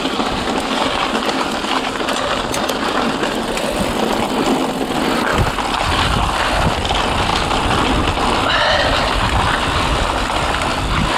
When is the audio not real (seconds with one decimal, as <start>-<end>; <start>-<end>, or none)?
none